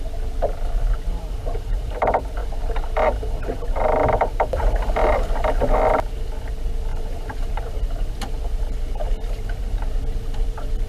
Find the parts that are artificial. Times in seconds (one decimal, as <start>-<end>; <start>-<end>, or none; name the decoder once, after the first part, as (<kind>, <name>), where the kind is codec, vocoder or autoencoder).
1.4-2.0 (vocoder, BigVGAN v2); 6.9-8.1

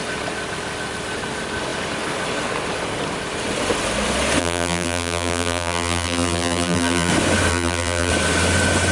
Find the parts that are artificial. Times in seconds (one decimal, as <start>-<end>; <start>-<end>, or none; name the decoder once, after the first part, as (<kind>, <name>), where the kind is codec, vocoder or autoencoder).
4.4-7.1 (vocoder, BigVGAN v2); 7.5-8.1

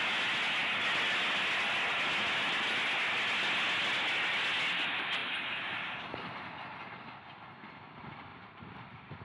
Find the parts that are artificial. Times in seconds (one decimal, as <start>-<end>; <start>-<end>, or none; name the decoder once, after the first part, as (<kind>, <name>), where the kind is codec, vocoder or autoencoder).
8.3-9.2 (vocoder, BigVGAN v2)

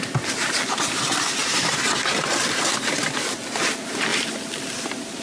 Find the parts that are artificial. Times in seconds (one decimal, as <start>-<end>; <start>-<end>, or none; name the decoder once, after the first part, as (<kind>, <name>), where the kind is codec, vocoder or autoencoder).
1.4-2.7 (vocoder, BigVGAN v2); 4.1-4.8

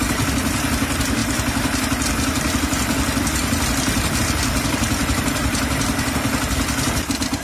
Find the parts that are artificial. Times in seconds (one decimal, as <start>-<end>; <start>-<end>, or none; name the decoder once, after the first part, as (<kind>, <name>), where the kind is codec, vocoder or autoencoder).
none